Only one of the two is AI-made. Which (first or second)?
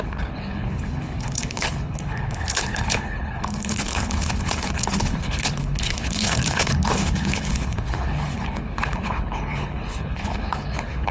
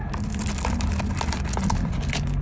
first